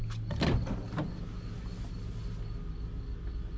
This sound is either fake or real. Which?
real